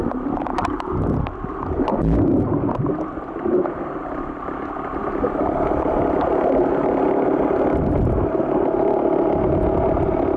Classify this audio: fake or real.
real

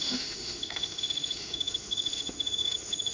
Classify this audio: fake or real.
fake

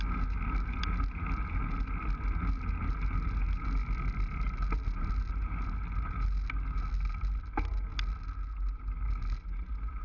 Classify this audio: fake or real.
real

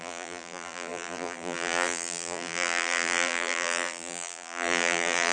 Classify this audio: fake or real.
fake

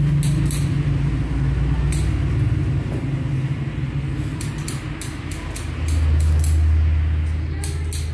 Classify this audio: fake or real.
real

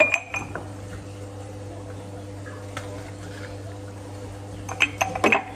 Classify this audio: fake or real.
real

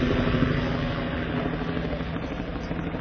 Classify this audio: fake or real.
real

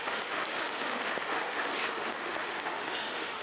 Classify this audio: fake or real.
fake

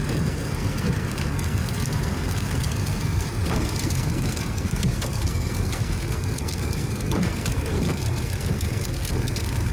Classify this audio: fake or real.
fake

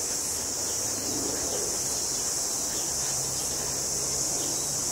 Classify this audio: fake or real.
real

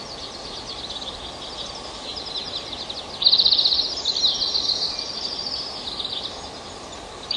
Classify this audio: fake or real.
real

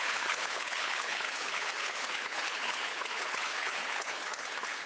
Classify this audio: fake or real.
fake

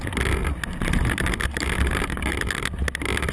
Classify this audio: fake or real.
real